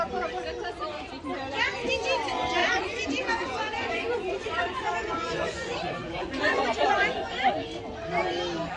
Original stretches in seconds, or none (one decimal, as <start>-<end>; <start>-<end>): 0.0-2.6; 7.5-8.8